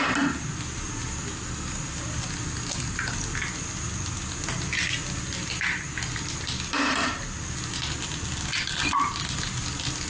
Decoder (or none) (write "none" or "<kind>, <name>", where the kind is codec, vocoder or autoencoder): none